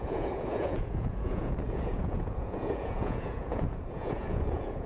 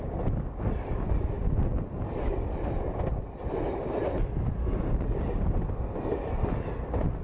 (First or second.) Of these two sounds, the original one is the second